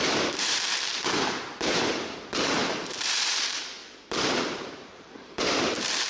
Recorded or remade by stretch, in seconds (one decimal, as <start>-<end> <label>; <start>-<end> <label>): 0.0-0.9 remade; 0.9-2.1 recorded; 2.1-3.8 remade; 3.8-4.4 recorded; 4.4-6.1 remade